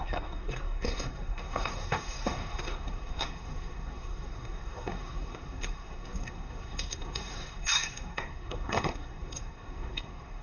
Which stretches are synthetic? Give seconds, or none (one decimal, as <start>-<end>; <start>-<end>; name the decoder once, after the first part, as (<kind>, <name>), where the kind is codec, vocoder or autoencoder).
0.0-10.4 (codec, SNAC)

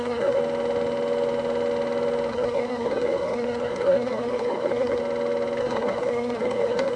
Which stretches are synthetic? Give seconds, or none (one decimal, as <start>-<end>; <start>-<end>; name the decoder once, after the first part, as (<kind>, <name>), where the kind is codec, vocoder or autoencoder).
0.0-0.4 (codec, SNAC); 2.3-5.0; 5.6-7.0

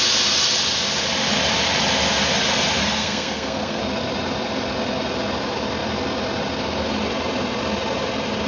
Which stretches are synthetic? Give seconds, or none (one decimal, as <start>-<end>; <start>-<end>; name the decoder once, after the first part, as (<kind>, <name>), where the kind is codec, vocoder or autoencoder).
2.8-3.8 (codec, SNAC)

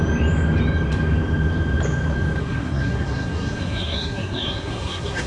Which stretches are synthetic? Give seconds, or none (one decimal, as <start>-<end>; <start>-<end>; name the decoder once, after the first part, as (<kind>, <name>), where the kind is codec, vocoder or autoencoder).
2.4-5.3 (codec, SNAC)

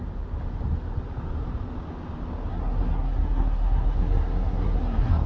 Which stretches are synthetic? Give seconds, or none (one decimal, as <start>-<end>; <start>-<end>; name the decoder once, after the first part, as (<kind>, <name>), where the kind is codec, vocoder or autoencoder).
2.5-5.3 (codec, SNAC)

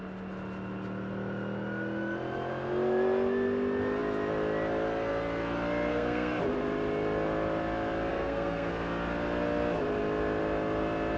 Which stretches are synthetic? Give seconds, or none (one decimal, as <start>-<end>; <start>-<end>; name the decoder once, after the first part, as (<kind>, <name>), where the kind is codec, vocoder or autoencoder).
5.9-6.4 (codec, SNAC); 8.1-8.7

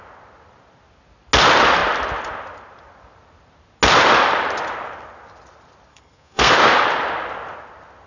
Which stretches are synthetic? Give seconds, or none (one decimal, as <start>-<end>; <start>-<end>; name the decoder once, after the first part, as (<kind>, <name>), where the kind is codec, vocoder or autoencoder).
5.9-6.5 (codec, SNAC)